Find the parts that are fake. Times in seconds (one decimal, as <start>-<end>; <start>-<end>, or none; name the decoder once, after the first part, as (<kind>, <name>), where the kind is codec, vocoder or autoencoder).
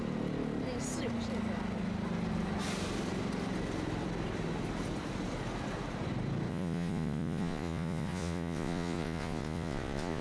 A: 6.5-10.2 (vocoder, Vocos)